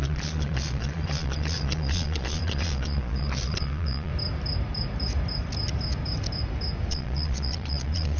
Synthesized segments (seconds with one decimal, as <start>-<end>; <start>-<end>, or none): 0.0-4.1; 6.9-8.2